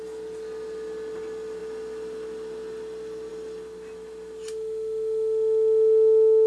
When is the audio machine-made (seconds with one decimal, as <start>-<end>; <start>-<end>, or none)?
none